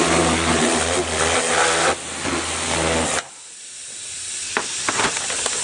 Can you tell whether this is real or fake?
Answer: real